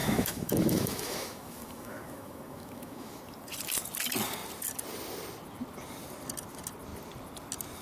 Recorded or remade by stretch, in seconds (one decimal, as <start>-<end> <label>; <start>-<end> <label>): 0.0-3.2 remade; 3.2-7.8 recorded